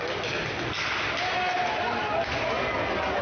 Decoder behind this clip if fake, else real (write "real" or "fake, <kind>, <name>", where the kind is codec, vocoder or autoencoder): real